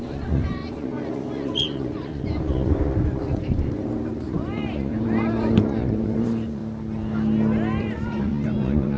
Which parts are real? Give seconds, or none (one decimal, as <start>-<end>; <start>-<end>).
6.6-7.8